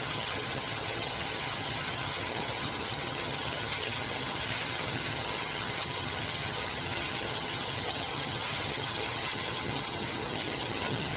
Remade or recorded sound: remade